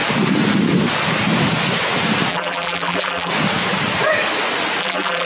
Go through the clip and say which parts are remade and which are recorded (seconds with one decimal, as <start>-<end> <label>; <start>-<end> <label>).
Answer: 0.0-2.3 recorded; 2.3-3.3 remade; 3.3-4.8 recorded; 4.8-5.3 remade